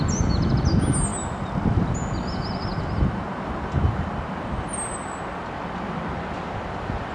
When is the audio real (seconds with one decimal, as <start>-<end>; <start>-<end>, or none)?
0.0-7.1